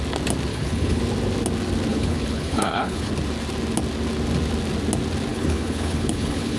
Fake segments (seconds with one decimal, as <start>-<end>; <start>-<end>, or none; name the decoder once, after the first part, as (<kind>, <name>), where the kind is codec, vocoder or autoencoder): 0.5-1.0 (codec, HILCodec); 1.9-3.1; 5.3-6.6